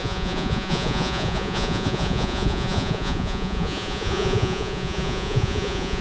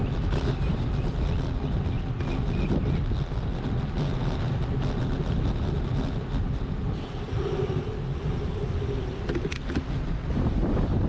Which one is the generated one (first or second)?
first